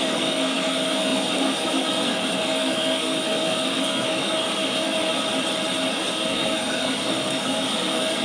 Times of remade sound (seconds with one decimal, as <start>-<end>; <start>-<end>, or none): 0.0-5.1; 5.9-8.2